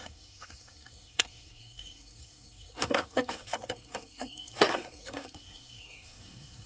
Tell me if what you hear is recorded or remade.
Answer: remade